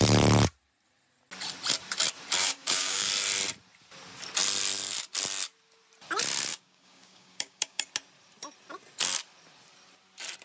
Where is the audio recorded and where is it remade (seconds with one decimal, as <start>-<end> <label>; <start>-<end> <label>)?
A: 0.0-2.4 recorded; 2.4-3.1 remade; 3.1-6.5 recorded; 6.5-7.8 remade; 7.8-10.4 recorded